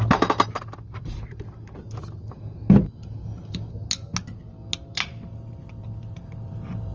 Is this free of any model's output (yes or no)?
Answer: yes